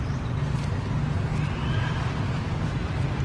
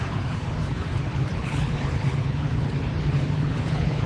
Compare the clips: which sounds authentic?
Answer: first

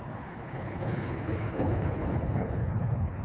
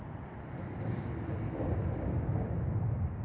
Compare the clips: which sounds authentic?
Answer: second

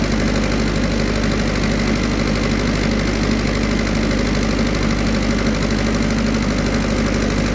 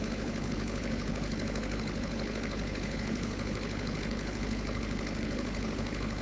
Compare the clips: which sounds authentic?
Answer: first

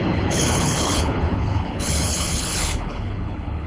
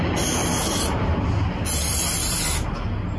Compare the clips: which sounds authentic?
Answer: second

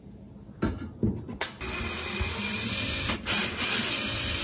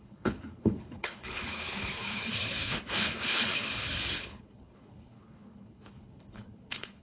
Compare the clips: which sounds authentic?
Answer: first